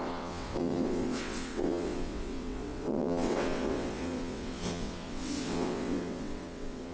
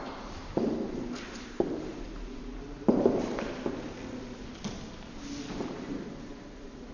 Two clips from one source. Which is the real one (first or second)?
second